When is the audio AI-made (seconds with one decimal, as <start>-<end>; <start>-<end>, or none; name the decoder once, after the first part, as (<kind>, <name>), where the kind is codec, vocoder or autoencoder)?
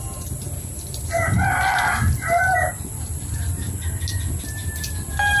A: none